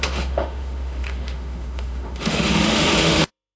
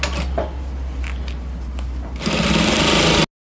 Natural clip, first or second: second